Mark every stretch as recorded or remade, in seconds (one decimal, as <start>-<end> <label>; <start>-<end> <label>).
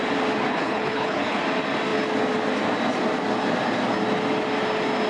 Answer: 0.0-0.5 recorded; 0.5-1.4 remade; 1.4-5.1 recorded